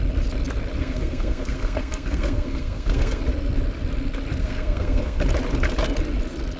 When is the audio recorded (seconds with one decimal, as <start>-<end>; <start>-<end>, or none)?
0.0-0.8; 3.2-4.4; 5.2-6.6